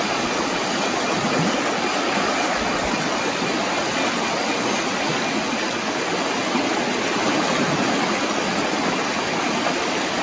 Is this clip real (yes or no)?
yes